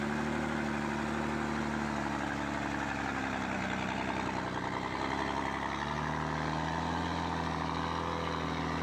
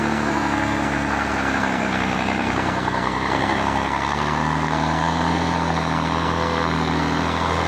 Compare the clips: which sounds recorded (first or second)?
first